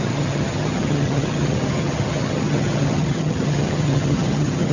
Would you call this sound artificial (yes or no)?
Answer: yes